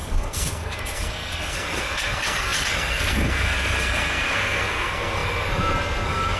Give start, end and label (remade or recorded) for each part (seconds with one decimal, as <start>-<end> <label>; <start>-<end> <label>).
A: 0.0-6.4 remade